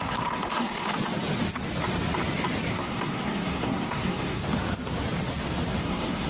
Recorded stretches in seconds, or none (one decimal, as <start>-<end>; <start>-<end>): 0.9-2.7; 4.4-5.8